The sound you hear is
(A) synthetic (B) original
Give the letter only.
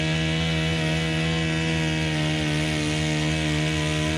B